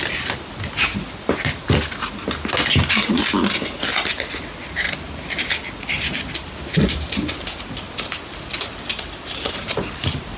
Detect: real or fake real